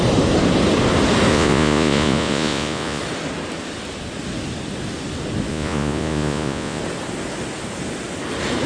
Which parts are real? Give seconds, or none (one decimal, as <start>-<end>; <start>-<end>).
0.0-1.3; 3.0-5.5; 6.8-8.7